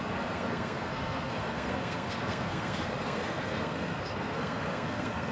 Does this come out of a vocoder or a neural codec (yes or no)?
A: yes